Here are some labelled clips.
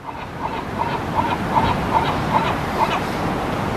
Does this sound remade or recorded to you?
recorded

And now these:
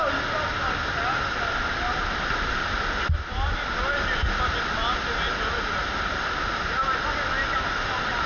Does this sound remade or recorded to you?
recorded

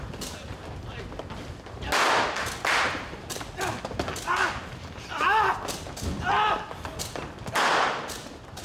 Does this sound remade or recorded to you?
recorded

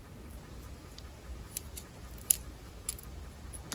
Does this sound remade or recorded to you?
recorded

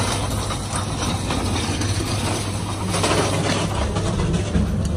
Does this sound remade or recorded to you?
recorded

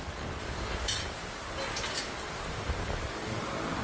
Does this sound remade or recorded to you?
recorded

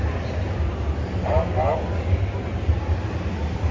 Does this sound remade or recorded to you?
recorded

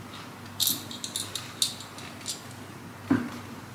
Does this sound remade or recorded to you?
recorded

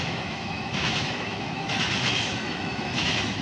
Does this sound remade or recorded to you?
remade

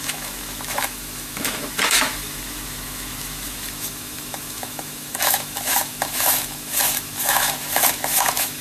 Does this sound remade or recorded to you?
remade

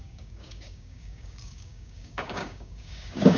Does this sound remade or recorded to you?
remade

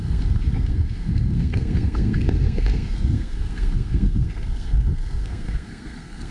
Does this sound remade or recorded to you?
remade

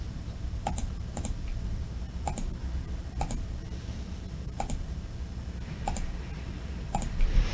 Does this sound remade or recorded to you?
recorded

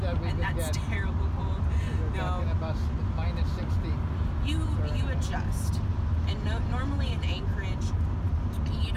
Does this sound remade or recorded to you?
recorded